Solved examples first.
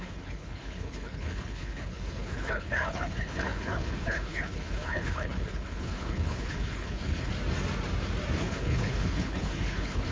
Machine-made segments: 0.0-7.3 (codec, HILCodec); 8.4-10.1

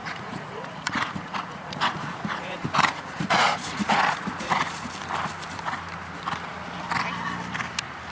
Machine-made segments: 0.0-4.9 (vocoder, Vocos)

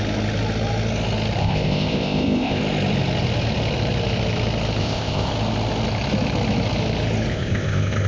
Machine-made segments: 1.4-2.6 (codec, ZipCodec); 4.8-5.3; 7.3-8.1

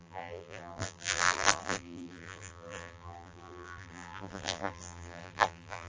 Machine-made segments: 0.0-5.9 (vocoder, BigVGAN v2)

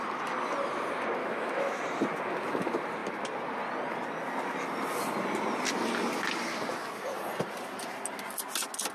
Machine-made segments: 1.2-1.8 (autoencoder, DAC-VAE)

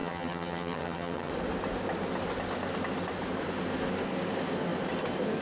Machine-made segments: 0.0-1.3 (vocoder, HiFi-GAN)

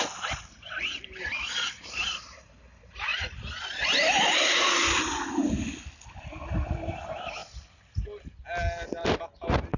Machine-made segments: none